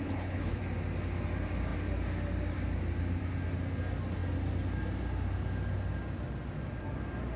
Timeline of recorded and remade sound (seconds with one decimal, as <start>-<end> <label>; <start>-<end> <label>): 0.0-0.6 remade; 0.6-7.4 recorded